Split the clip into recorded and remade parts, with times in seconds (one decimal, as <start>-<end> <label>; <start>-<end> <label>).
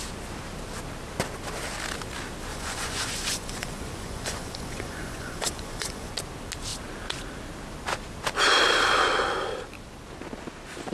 0.0-2.5 recorded; 2.5-6.1 remade; 6.1-10.9 recorded